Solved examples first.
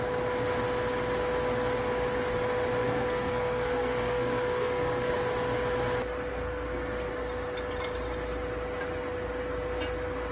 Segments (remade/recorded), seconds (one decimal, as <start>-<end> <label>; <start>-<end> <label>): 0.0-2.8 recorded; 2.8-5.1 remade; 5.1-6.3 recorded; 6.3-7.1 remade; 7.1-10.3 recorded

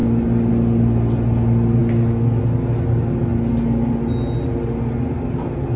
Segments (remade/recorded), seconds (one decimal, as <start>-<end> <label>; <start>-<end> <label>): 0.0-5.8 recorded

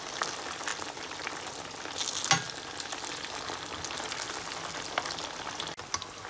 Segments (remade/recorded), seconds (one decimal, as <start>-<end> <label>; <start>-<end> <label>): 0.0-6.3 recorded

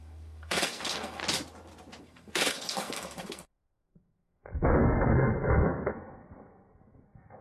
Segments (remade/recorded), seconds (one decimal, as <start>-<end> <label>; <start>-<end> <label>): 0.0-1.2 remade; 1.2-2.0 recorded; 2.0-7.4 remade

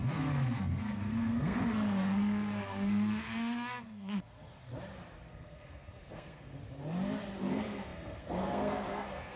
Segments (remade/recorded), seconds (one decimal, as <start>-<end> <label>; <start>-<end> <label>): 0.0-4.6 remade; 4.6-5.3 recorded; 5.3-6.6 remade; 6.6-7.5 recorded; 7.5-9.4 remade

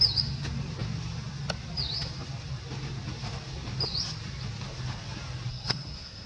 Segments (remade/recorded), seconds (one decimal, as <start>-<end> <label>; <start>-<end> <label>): 0.0-5.5 recorded; 5.5-6.3 remade